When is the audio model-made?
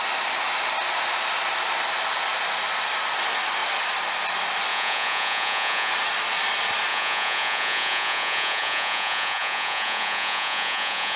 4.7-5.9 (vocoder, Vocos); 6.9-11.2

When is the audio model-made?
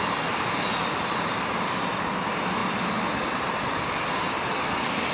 none